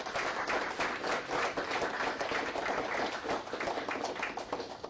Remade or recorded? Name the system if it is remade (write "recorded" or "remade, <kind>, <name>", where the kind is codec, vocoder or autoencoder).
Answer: recorded